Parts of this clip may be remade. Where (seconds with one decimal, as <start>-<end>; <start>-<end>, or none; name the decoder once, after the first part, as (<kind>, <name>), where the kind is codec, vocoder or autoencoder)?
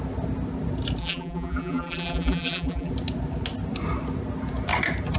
1.0-2.9 (vocoder, BigVGAN v2)